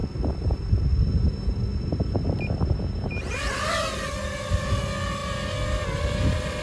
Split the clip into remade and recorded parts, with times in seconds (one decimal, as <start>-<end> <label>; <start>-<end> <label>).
0.0-6.6 recorded